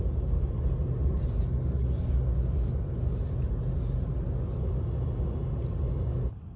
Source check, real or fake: real